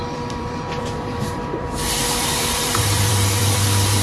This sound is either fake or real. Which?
fake